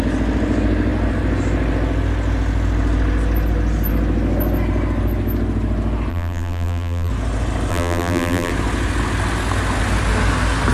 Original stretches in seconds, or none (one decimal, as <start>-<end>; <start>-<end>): 0.0-6.1; 7.1-7.7; 8.5-10.7